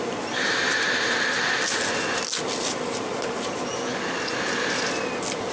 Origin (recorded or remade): recorded